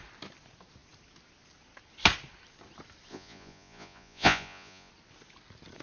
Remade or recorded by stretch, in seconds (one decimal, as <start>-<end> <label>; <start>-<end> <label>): 0.0-3.1 recorded; 3.1-4.9 remade; 4.9-5.8 recorded